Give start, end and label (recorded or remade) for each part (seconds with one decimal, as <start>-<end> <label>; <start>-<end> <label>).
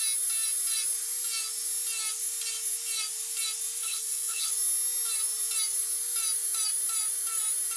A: 0.0-3.8 recorded; 3.8-4.5 remade; 4.5-7.8 recorded